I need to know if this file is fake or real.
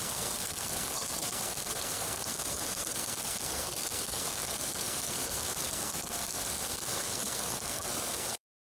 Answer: fake